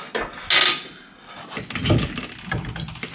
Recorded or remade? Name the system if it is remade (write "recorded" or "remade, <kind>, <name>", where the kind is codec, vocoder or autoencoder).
recorded